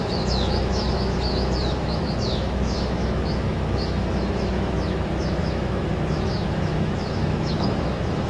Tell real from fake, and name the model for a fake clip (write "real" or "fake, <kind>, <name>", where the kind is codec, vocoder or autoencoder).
fake, autoencoder, DAC-VAE